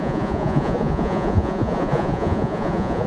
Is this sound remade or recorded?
remade